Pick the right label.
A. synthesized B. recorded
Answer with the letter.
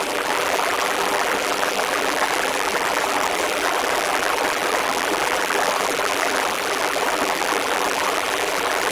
A